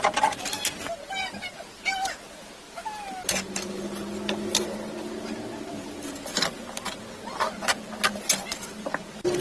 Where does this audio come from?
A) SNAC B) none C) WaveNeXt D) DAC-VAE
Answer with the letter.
B